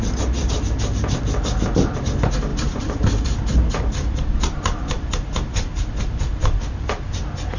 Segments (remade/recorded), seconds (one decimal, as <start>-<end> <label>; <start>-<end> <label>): 0.0-0.4 recorded; 0.4-1.2 remade; 1.2-2.5 recorded; 2.5-6.6 remade; 6.6-7.6 recorded